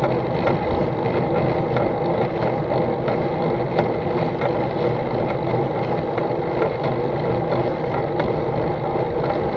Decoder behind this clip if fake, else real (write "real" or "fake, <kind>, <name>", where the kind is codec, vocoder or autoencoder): real